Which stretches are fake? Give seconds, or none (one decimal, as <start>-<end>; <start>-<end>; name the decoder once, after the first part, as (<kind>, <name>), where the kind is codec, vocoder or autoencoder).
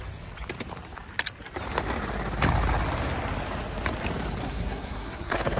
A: 4.4-5.6 (codec, SNAC)